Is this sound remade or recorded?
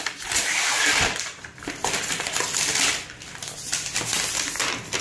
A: remade